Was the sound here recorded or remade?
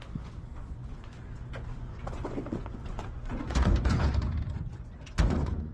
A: remade